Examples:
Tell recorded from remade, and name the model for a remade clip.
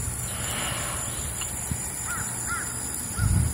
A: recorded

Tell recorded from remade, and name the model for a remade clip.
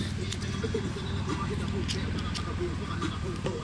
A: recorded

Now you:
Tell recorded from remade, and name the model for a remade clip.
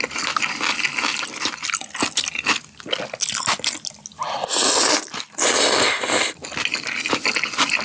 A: recorded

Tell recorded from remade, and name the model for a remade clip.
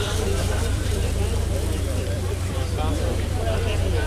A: remade, vocoder, BigVGAN v2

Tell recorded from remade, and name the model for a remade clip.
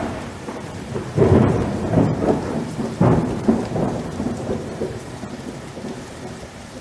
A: remade, vocoder, BigVGAN v2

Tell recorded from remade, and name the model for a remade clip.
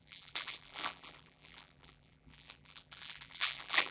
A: remade, vocoder, BigVGAN v2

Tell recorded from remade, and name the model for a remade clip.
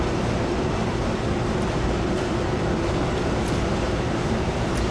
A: remade, vocoder, BigVGAN v2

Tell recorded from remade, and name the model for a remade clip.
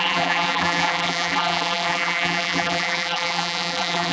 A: remade, vocoder, BigVGAN v2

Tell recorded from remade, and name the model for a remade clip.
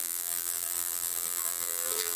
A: remade, vocoder, BigVGAN v2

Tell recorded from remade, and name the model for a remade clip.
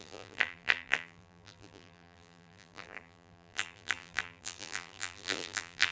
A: remade, vocoder, BigVGAN v2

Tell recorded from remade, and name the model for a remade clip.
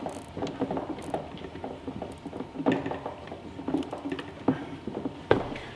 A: remade, vocoder, BigVGAN v2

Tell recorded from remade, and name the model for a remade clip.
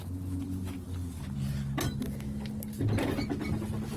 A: recorded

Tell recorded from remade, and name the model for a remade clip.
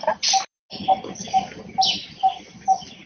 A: recorded